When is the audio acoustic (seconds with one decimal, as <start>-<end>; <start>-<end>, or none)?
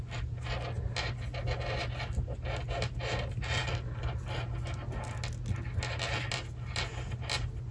0.0-7.7